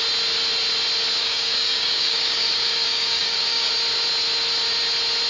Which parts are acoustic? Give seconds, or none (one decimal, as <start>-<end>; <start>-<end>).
0.0-1.2; 3.7-5.3